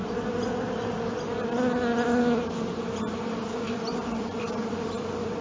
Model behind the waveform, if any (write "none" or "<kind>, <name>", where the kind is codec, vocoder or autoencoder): none